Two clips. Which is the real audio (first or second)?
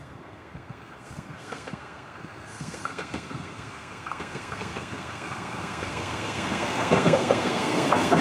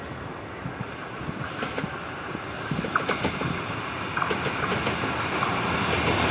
second